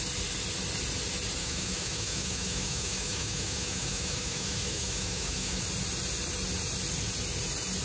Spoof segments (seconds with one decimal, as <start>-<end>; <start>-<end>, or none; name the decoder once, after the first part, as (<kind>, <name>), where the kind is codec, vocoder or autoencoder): 1.4-5.6 (autoencoder, DAC-VAE)